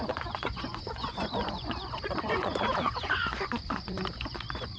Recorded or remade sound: remade